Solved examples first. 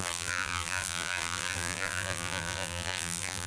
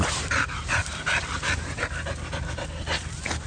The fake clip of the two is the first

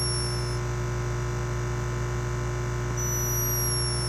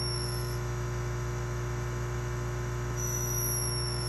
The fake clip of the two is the second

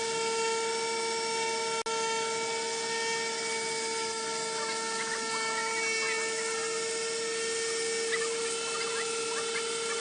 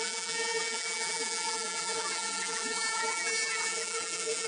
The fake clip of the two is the second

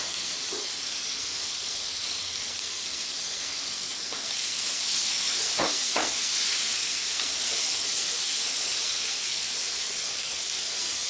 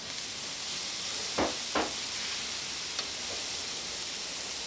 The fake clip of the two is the first